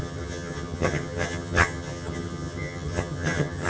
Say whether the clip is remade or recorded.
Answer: remade